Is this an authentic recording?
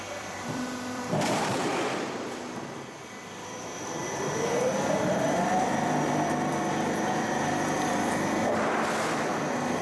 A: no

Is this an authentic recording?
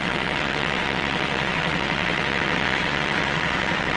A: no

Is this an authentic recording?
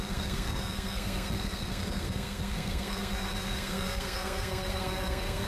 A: no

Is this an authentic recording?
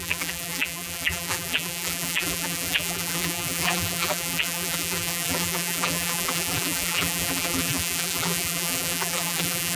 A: no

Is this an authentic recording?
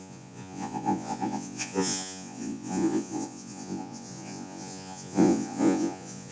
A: no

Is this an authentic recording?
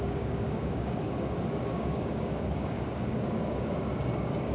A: no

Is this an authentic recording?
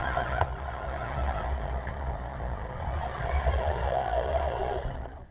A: no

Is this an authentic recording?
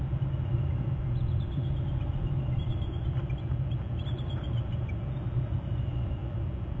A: yes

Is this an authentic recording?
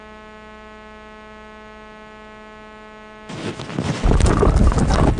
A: yes